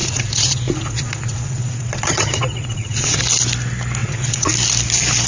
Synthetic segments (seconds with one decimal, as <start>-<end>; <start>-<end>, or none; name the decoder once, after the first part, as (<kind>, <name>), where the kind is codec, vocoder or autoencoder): 0.0-3.2 (vocoder, Vocos); 4.0-4.5